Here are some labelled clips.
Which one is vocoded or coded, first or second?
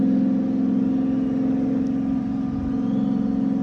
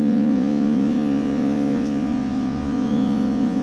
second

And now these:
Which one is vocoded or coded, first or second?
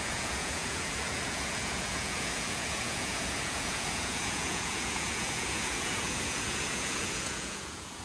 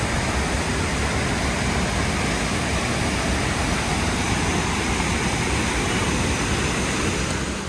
first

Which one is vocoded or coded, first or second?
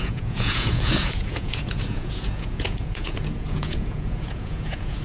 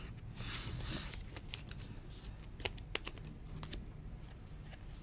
first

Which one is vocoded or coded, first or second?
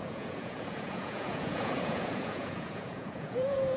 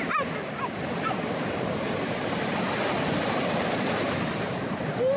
first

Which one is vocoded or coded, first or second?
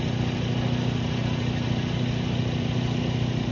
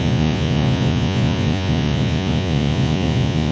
second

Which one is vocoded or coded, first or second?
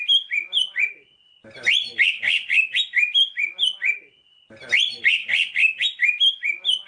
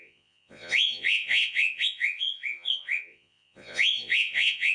second